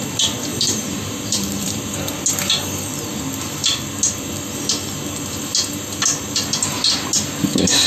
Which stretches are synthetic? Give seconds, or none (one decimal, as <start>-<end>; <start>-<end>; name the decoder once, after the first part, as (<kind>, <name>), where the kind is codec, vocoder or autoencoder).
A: 0.5-1.9 (vocoder, BigVGAN v2)